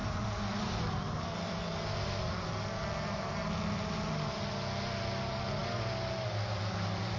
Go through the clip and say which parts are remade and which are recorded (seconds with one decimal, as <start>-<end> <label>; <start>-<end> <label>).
0.0-7.2 recorded